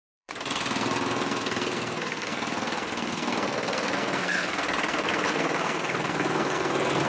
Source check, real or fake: fake